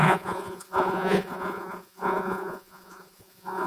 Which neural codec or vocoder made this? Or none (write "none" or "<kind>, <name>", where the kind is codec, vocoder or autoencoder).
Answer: vocoder, Vocos